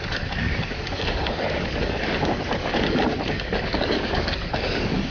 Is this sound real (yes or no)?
no